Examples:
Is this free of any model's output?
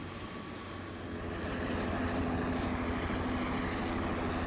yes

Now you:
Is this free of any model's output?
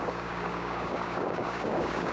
no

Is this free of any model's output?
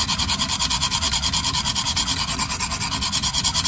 yes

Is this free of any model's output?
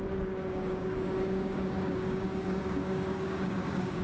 no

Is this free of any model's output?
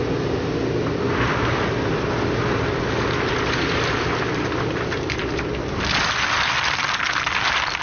yes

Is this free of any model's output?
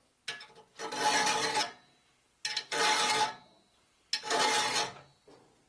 yes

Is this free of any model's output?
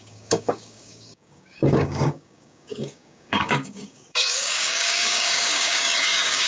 no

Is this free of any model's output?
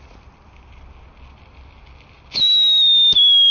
yes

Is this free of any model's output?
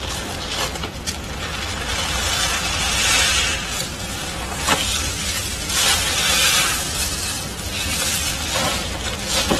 yes